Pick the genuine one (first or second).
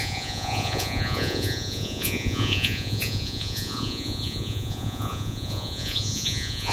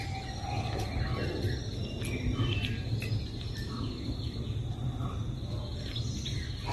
second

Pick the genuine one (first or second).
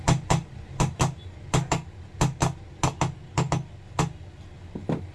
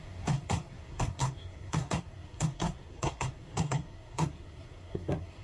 first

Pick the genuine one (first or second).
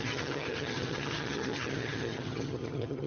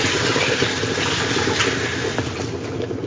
second